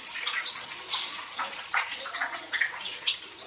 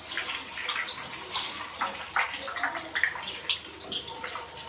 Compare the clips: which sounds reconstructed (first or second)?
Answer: first